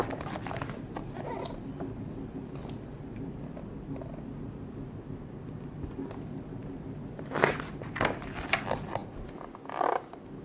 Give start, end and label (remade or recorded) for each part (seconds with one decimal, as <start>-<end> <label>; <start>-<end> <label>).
0.0-10.4 recorded